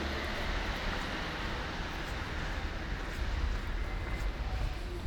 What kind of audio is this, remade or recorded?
recorded